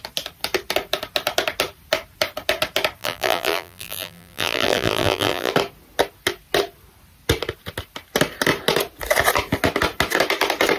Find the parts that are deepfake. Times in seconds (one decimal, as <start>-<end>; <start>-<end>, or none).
3.0-5.5